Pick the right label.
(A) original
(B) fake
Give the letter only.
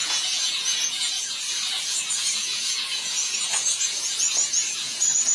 B